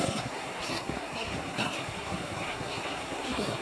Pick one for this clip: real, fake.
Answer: fake